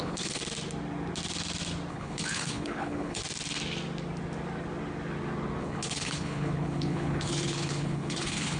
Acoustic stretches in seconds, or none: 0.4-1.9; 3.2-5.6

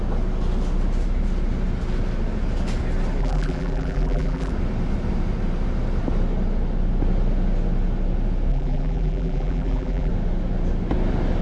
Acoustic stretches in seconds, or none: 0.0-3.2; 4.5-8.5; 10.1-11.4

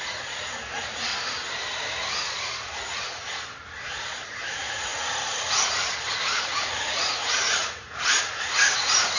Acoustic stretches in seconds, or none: 1.1-2.2

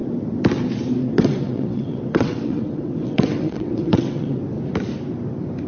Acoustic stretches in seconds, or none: 0.0-1.0; 4.4-5.7

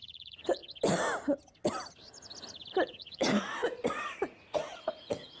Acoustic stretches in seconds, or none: 0.6-2.7

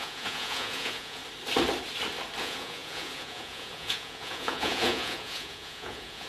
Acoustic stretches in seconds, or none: 1.2-2.4